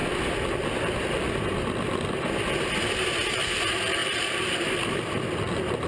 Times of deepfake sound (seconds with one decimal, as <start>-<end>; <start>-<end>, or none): none